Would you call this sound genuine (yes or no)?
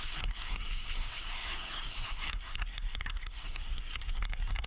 no